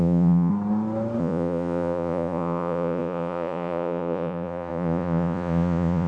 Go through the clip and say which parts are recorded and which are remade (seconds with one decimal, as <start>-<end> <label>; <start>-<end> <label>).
0.0-0.5 remade; 0.5-1.2 recorded; 1.2-6.1 remade